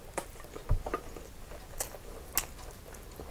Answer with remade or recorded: recorded